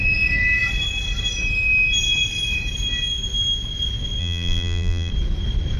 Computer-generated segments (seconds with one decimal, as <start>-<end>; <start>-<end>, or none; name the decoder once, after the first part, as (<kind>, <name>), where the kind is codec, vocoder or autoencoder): 4.2-5.1 (vocoder, BigVGAN v2)